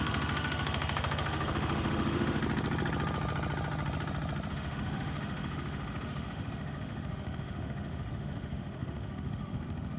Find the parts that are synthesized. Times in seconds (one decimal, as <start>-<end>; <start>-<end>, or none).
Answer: 0.0-2.4; 4.5-10.0